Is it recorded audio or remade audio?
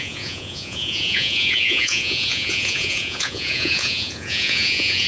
remade